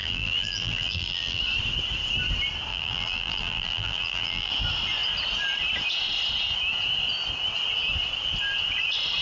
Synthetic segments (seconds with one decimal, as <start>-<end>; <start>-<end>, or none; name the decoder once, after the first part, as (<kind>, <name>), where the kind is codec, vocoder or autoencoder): 0.0-1.4 (vocoder, BigVGAN v2); 2.7-4.5